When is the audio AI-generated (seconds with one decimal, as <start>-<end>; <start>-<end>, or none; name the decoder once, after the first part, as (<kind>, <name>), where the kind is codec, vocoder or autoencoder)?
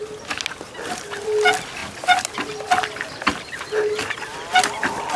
none